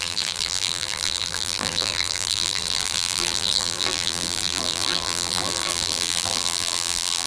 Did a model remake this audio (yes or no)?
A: yes